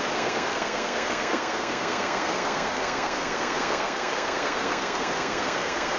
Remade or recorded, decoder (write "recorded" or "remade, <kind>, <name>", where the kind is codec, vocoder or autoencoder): remade, codec, SNAC